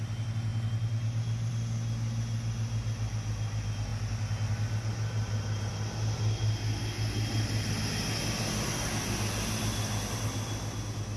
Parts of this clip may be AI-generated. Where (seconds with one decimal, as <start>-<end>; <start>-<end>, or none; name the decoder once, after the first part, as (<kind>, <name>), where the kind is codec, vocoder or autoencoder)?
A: none